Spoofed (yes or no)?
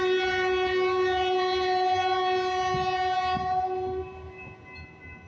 no